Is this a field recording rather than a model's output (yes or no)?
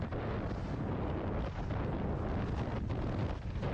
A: yes